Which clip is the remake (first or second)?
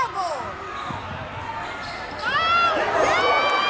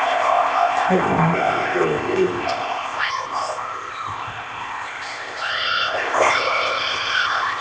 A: second